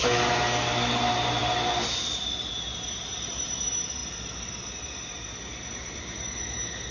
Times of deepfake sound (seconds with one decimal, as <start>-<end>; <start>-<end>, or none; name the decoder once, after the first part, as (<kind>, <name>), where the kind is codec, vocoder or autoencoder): none

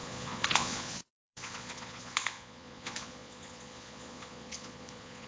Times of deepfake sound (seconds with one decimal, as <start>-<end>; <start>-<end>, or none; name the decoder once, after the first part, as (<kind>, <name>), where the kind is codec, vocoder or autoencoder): 0.0-5.3 (vocoder, Vocos)

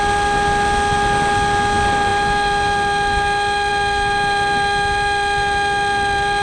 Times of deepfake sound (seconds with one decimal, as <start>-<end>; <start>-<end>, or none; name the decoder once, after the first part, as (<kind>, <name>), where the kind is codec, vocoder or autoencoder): none